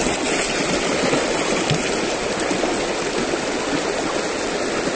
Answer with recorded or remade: recorded